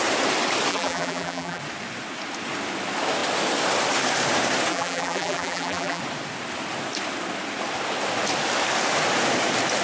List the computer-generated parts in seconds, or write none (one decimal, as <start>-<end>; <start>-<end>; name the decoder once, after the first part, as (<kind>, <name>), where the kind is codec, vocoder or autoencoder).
0.7-1.6 (vocoder, BigVGAN v2); 4.7-6.0